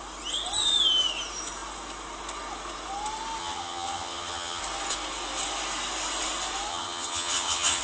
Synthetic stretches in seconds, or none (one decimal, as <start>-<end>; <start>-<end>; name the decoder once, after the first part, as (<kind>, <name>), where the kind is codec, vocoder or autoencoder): 3.4-4.6 (vocoder, HiFi-GAN); 6.7-7.8